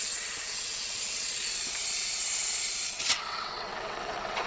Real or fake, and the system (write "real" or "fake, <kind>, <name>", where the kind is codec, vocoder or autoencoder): fake, vocoder, WaveNeXt